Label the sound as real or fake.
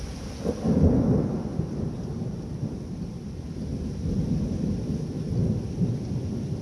real